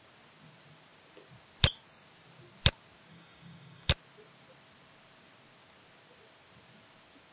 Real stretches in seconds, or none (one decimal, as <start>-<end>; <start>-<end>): 0.0-3.1; 3.9-7.3